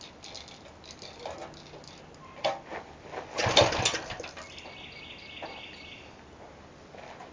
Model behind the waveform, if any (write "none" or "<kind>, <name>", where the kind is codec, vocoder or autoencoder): none